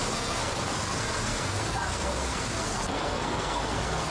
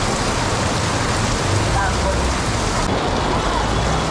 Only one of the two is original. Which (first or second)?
second